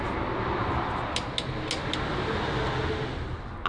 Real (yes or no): yes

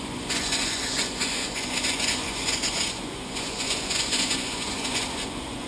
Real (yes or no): no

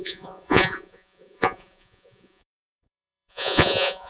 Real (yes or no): no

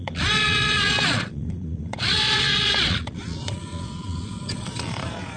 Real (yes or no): no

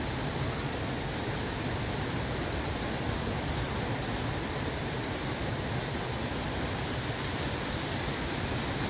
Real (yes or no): yes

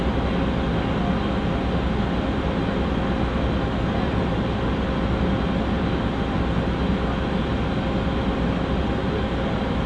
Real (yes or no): yes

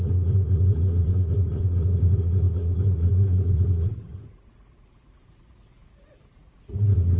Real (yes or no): no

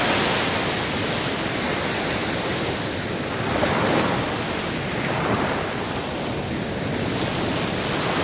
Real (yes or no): yes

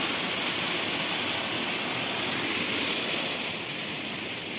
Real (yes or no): yes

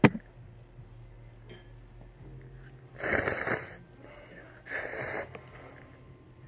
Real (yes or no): yes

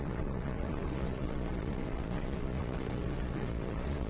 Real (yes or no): no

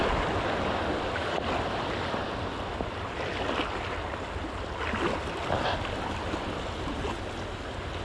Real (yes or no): yes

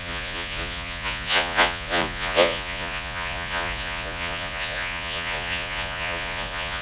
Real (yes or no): no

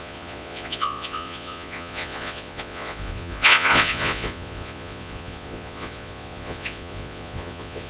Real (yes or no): no